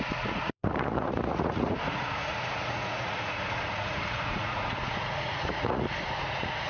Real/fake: fake